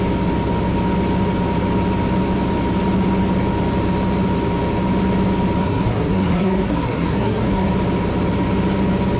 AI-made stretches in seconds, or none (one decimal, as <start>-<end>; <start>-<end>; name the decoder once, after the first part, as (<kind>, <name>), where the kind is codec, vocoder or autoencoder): 5.6-7.7 (codec, SNAC)